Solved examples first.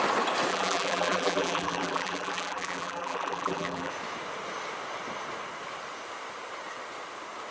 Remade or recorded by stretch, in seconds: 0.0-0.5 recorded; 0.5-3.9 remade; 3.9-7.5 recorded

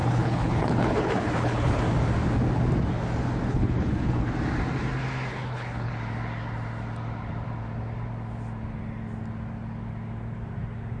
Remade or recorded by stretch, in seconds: 0.0-1.8 remade; 1.8-3.5 recorded; 3.5-4.3 remade; 4.3-5.3 recorded; 5.3-5.9 remade; 5.9-11.0 recorded

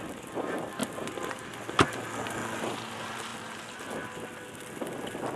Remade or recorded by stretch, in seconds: 0.0-5.4 recorded

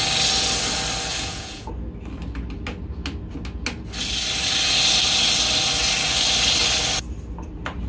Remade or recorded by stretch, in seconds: 0.0-1.1 recorded; 1.1-1.7 remade; 1.7-7.9 recorded

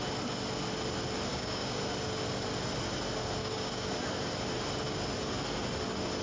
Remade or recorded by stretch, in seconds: 0.0-1.3 recorded; 1.3-1.8 remade; 1.8-3.4 recorded; 3.4-3.9 remade; 3.9-6.2 recorded